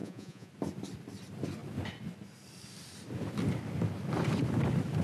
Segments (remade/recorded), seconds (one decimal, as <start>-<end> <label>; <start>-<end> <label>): 0.0-0.5 remade; 0.5-5.0 recorded